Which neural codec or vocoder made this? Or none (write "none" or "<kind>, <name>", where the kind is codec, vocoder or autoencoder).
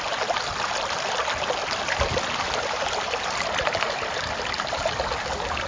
none